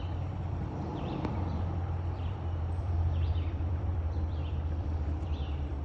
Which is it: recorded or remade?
remade